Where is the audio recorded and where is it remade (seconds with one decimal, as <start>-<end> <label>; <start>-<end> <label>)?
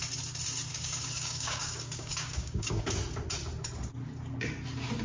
0.0-0.7 recorded; 0.7-2.8 remade; 2.8-5.0 recorded